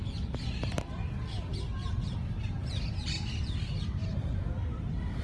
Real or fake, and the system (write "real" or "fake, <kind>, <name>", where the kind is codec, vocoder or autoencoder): real